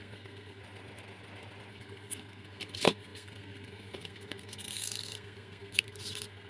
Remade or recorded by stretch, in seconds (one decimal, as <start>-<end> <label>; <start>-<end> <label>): 0.0-0.6 remade; 0.6-1.7 recorded; 1.7-6.5 remade